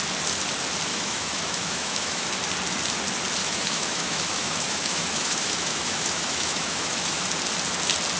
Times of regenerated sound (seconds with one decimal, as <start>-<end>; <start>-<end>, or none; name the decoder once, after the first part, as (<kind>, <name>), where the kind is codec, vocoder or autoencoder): 0.9-2.3 (autoencoder, DAC-VAE); 3.4-7.3